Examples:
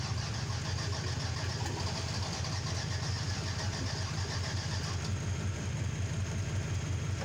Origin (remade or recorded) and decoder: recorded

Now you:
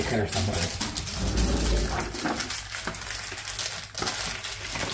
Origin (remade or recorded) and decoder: recorded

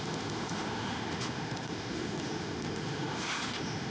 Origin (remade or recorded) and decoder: remade, autoencoder, DAC-VAE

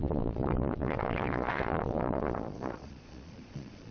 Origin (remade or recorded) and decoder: remade, vocoder, Vocos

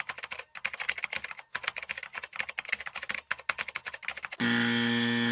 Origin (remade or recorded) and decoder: recorded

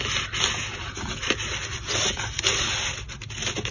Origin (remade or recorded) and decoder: recorded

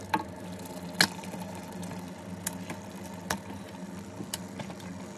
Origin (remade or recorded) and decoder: recorded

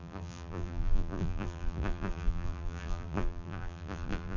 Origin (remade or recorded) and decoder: remade, vocoder, BigVGAN v2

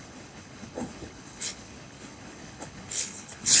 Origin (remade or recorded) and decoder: remade, codec, HILCodec